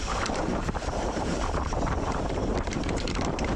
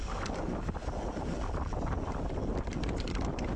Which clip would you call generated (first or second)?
first